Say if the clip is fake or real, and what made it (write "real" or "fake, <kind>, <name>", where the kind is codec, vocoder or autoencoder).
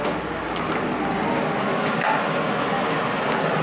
real